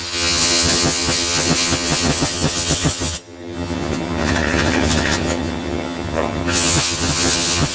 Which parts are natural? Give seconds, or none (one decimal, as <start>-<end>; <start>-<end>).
none

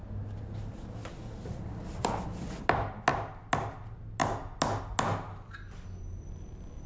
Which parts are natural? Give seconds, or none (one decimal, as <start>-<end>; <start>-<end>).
0.0-6.9

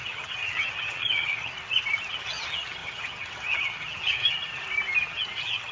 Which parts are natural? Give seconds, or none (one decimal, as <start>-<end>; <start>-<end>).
1.5-2.1; 4.5-5.1